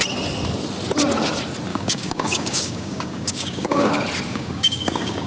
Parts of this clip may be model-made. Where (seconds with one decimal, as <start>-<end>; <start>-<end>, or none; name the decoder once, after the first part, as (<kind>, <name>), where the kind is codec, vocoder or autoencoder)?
1.7-3.9 (codec, DAC); 4.3-5.3